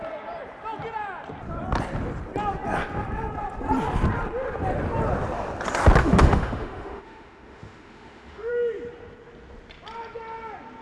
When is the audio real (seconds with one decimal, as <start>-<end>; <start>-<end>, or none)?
0.0-6.0; 8.5-10.8